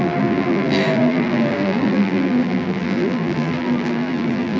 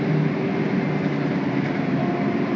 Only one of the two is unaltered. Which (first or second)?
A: second